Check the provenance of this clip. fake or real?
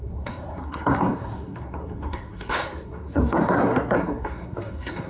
fake